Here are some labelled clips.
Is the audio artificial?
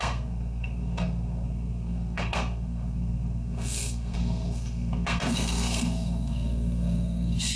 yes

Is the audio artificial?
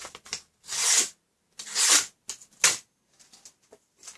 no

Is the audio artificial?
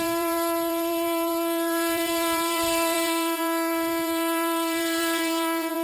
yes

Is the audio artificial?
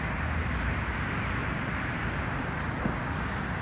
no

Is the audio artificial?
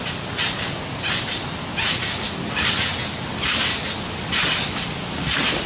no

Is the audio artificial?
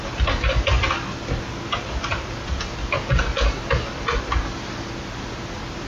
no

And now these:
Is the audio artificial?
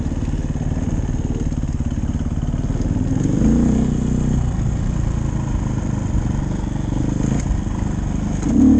no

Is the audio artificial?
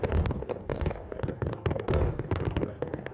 yes